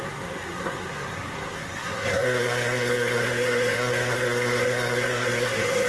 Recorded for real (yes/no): no